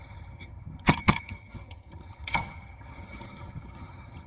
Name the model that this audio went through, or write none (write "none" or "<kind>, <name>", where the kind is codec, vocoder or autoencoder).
vocoder, HiFi-GAN